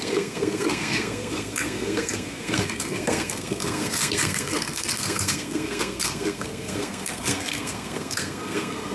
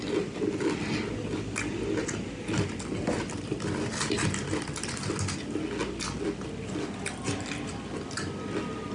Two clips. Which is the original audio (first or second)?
second